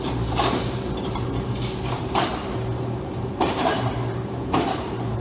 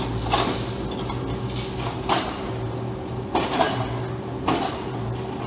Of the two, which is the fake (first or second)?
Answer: first